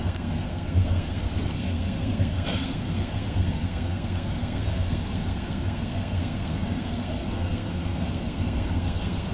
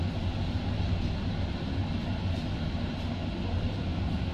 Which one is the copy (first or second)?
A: first